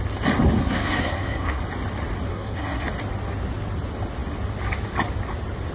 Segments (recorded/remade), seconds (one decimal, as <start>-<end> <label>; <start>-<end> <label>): 0.0-0.6 recorded; 0.6-1.6 remade; 1.6-2.3 recorded; 2.3-2.9 remade; 2.9-5.7 recorded